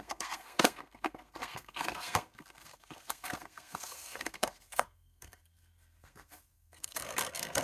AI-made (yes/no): yes